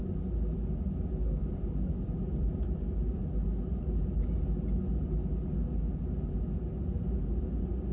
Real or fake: real